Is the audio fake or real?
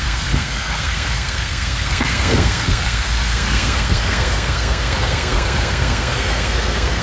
fake